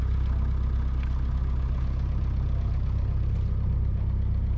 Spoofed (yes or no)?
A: no